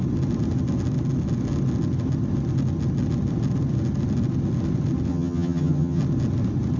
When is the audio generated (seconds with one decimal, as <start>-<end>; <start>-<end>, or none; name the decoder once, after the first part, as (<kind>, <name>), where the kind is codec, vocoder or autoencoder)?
5.1-6.0 (vocoder, HiFi-GAN)